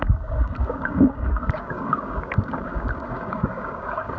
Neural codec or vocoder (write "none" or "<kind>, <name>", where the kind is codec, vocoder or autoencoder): codec, DAC